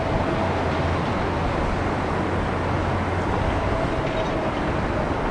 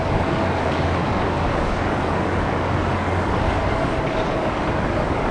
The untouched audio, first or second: first